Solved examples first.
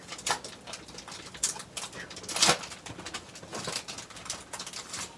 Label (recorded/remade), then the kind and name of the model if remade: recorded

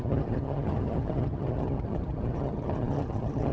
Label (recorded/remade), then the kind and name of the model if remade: remade, vocoder, HiFi-GAN